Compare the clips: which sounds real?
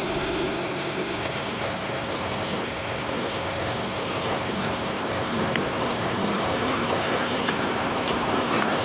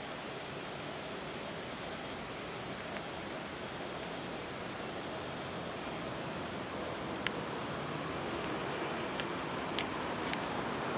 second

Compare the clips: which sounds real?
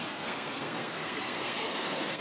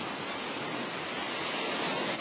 second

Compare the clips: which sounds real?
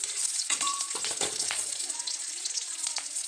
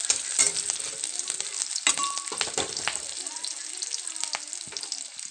second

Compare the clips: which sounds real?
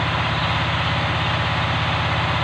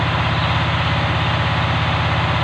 second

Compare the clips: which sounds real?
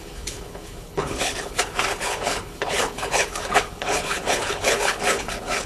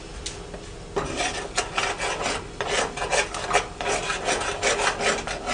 second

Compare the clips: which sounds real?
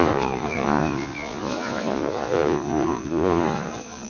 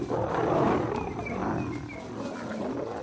second